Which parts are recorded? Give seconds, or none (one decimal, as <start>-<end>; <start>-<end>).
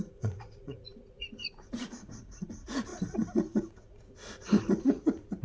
none